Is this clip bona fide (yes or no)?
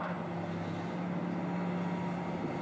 yes